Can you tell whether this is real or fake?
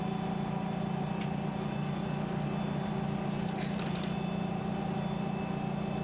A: real